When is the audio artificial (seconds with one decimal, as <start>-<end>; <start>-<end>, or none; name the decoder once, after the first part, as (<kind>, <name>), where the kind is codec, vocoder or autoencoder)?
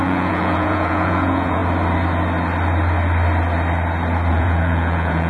0.0-1.6 (vocoder, Vocos); 4.3-5.3